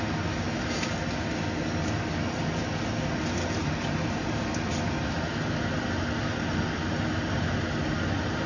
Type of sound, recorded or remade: recorded